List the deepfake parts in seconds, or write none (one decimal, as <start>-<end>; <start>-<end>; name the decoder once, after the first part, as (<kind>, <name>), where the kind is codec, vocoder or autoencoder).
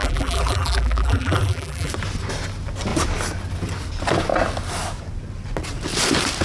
0.0-1.9 (vocoder, BigVGAN v2)